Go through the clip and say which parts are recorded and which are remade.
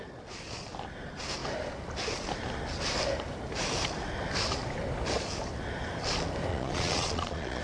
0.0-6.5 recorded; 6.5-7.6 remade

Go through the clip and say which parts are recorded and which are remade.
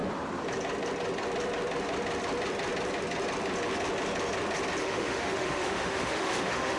0.0-4.8 recorded; 4.8-6.8 remade